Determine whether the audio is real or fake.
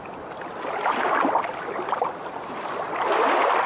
real